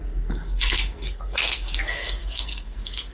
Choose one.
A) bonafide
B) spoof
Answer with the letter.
B